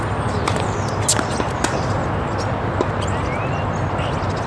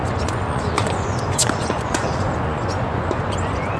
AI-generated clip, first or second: second